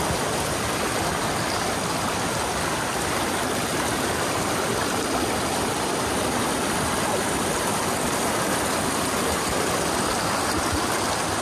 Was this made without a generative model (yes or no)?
yes